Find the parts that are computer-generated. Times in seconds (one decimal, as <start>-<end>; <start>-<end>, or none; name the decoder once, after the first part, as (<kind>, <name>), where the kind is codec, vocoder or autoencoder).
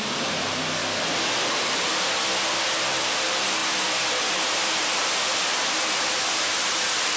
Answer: 0.0-0.8 (vocoder, BigVGAN v2); 3.0-3.6; 4.3-7.2